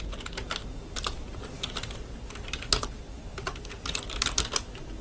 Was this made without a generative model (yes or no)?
yes